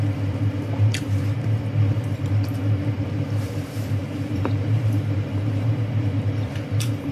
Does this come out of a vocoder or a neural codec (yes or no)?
yes